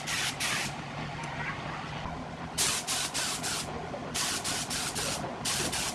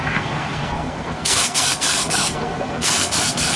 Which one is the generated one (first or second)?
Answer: second